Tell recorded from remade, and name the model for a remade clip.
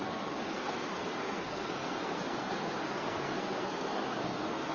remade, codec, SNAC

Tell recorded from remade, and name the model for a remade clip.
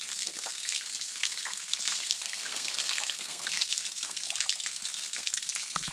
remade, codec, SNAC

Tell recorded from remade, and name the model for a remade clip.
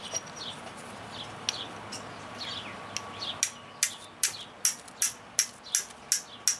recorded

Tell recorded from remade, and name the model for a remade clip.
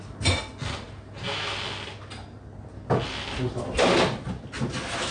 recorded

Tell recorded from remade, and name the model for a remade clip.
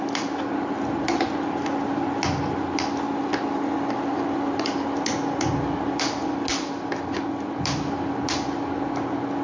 recorded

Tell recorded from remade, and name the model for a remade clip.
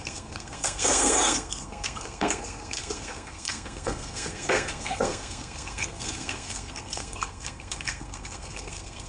remade, codec, SNAC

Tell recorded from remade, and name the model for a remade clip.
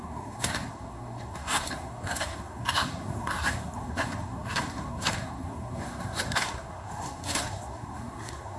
remade, codec, SNAC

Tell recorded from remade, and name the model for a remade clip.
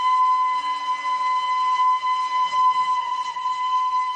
recorded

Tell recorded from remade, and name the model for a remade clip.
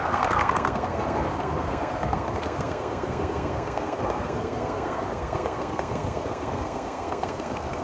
remade, codec, SNAC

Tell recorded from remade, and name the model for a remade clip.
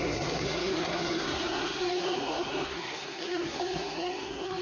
remade, codec, SNAC